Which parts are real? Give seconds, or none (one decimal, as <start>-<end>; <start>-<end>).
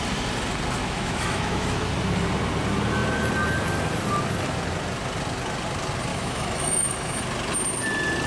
0.0-0.8; 1.9-6.1; 7.2-8.3